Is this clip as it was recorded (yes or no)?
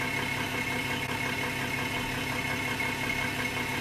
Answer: yes